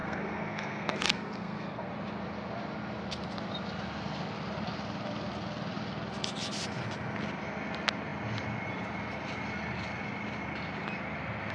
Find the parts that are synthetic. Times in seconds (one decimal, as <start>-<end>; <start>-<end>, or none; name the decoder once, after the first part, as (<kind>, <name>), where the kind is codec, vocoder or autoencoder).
0.0-1.9 (codec, SNAC)